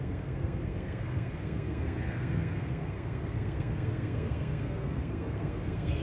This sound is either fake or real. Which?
fake